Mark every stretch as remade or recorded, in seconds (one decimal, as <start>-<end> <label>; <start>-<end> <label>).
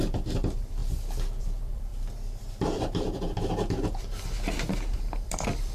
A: 0.0-0.8 remade; 0.8-1.4 recorded; 1.4-1.9 remade; 1.9-4.9 recorded; 4.9-5.7 remade